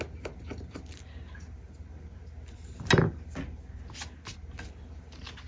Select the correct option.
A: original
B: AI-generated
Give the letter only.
A